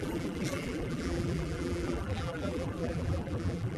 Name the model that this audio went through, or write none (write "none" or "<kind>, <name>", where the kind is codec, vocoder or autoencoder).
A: vocoder, BigVGAN v2